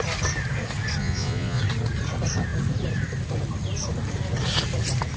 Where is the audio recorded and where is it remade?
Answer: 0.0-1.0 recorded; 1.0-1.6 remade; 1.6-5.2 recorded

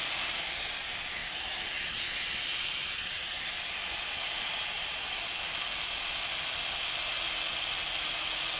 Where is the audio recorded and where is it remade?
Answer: 0.0-8.6 recorded

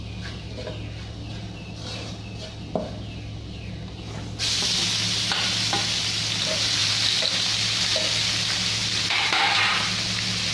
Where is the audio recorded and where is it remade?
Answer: 0.0-6.8 recorded; 6.8-7.4 remade; 7.4-8.8 recorded; 8.8-9.4 remade; 9.4-10.5 recorded

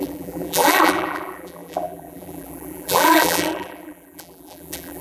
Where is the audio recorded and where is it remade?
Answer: 0.0-5.0 remade

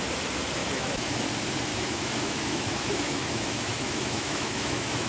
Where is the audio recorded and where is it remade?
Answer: 0.0-0.6 recorded; 0.6-1.1 remade; 1.1-1.7 recorded; 1.7-5.1 remade

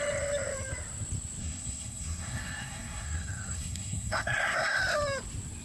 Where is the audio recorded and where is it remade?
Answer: 0.0-1.4 recorded; 1.4-4.8 remade; 4.8-5.6 recorded

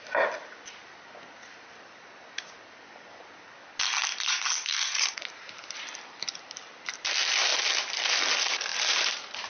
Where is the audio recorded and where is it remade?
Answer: 0.0-4.0 recorded; 4.0-6.5 remade; 6.5-8.7 recorded; 8.7-9.5 remade

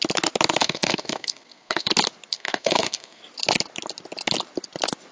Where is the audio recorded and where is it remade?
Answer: 0.0-0.6 recorded; 0.6-1.9 remade; 1.9-2.3 recorded; 2.3-3.2 remade; 3.2-5.1 recorded